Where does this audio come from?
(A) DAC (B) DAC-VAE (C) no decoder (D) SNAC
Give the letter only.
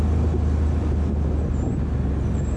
C